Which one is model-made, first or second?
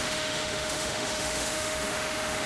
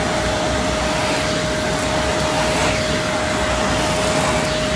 first